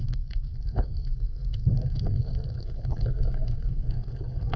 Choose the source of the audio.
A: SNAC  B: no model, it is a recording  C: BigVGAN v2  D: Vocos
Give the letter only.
A